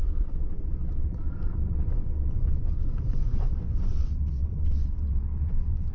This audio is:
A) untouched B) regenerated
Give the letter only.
B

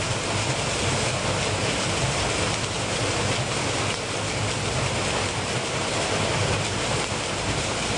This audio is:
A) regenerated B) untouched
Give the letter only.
B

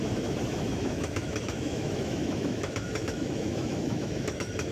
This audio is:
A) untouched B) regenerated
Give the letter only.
B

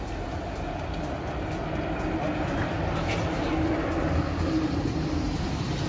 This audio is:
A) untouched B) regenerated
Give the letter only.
A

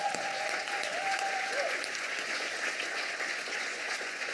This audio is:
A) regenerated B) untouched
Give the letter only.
A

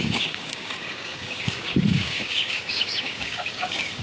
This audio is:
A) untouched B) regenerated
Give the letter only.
B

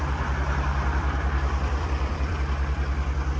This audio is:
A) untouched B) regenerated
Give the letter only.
B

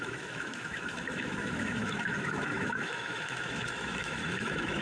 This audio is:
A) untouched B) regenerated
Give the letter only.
B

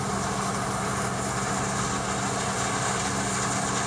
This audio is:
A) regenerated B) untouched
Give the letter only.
B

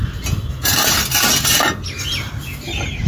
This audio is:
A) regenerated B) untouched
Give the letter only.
B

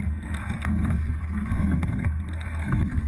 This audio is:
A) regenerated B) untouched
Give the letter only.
A